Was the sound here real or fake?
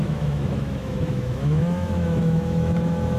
fake